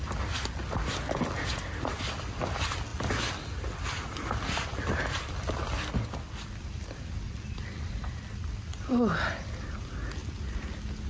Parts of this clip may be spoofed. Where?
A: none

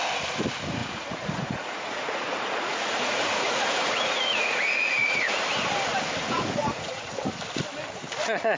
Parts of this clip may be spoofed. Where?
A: 0.8-5.4 (vocoder, Vocos); 6.2-7.1

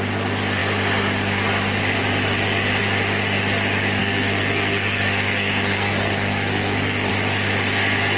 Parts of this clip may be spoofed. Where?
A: 4.0-7.1 (codec, SNAC)

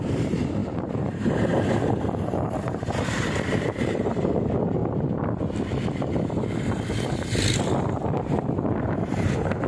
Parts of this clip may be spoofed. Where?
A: 0.0-4.8 (vocoder, BigVGAN v2); 9.0-9.7